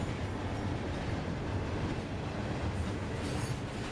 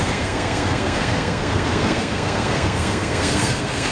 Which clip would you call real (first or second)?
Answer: first